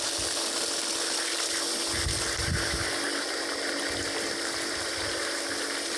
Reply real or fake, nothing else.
real